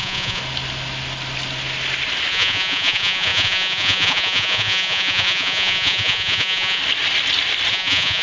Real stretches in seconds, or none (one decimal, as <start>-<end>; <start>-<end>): 0.4-2.3; 6.8-7.7